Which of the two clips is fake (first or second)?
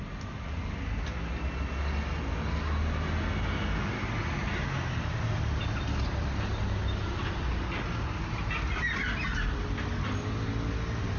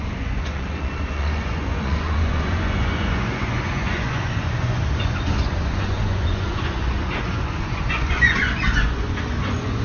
second